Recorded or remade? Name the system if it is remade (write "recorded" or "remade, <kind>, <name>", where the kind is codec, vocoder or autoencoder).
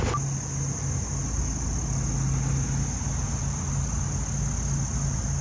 recorded